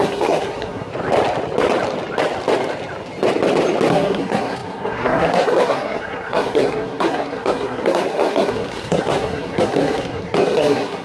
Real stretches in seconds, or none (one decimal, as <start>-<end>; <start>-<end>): 0.9-3.9